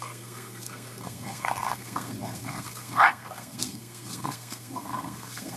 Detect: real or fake fake